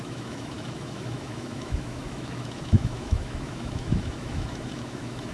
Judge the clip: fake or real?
fake